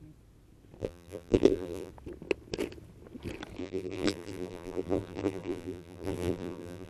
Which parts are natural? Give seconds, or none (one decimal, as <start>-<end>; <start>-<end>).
0.0-0.8; 1.9-3.6